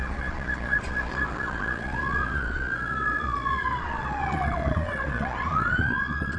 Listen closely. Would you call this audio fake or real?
fake